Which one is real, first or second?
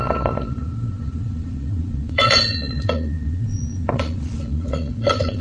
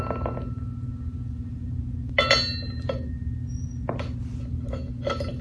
second